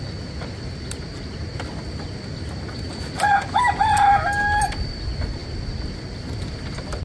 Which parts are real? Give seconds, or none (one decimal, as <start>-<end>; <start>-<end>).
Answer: 0.0-7.0

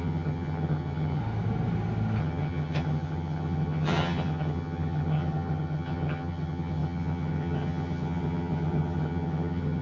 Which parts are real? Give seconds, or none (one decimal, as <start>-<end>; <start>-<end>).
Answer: 1.2-2.2